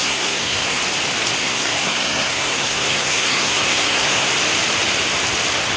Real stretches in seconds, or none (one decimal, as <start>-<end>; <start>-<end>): 0.8-1.4; 4.3-5.8